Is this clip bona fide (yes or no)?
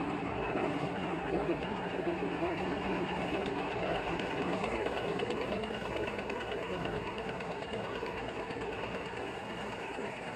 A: no